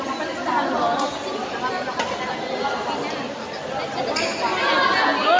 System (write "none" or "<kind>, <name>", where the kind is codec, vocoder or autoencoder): none